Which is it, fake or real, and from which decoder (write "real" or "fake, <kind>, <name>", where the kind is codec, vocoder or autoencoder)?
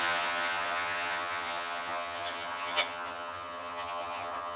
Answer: fake, vocoder, HiFi-GAN